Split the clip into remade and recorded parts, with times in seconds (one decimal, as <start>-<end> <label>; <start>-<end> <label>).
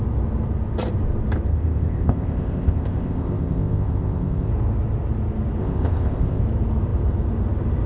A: 0.0-1.5 recorded; 1.5-4.5 remade; 4.5-5.6 recorded; 5.6-6.4 remade; 6.4-7.9 recorded